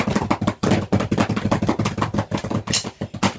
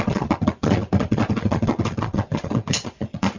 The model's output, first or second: second